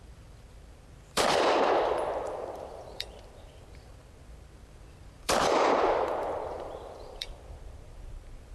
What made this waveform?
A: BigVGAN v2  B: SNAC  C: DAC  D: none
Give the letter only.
A